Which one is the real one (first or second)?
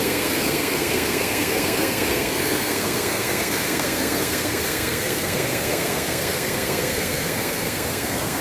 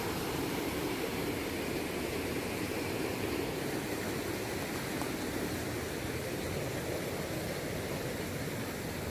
second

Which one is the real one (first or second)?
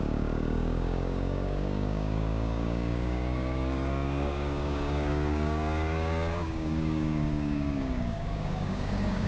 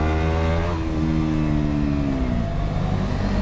second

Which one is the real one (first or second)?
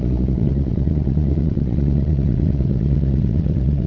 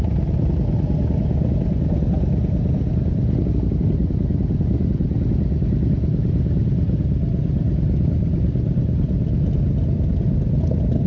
second